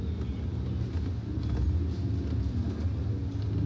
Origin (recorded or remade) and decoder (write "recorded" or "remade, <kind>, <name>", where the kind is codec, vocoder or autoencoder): recorded